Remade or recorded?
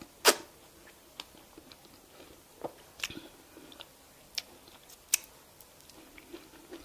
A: recorded